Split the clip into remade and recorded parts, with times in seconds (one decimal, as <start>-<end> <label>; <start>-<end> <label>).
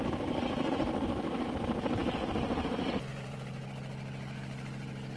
0.0-3.1 recorded; 3.1-3.7 remade; 3.7-5.2 recorded